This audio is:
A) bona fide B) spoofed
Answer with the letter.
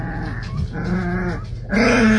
A